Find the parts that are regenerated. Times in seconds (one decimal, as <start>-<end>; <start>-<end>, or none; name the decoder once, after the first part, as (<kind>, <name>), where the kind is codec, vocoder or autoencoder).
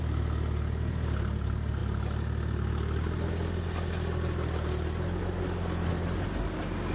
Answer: none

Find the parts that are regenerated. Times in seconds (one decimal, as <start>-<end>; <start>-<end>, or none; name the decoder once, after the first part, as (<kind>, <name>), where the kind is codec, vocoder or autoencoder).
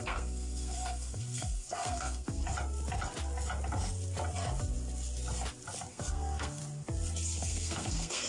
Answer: 0.0-2.4 (codec, SNAC); 5.9-6.6; 7.4-8.3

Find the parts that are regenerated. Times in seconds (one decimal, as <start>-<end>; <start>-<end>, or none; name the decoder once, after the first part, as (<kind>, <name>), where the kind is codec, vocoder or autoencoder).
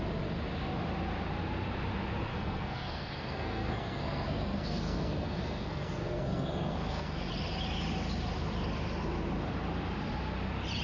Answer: 2.3-7.3 (codec, SNAC)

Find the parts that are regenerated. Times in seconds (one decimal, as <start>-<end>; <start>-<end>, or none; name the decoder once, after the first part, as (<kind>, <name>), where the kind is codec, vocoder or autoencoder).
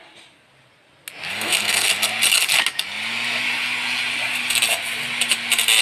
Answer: 1.3-1.9 (codec, SNAC)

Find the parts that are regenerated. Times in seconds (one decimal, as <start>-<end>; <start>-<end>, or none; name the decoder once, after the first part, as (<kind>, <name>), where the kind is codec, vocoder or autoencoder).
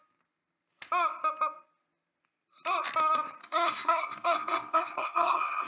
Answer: 3.4-5.7 (codec, SNAC)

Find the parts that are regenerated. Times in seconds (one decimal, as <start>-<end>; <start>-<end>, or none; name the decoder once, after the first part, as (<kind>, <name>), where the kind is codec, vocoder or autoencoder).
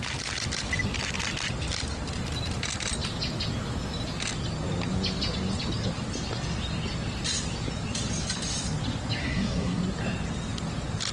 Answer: 9.2-9.8 (codec, SNAC)